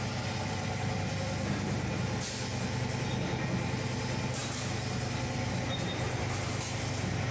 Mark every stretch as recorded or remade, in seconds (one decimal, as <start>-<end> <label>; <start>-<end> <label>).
0.0-7.3 recorded